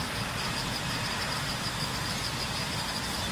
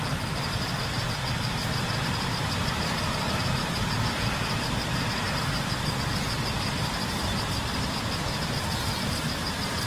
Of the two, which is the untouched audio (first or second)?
first